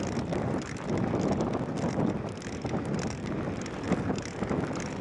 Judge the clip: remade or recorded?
recorded